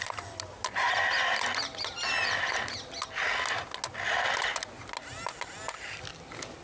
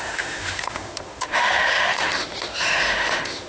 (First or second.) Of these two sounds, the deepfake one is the second